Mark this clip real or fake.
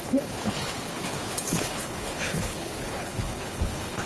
fake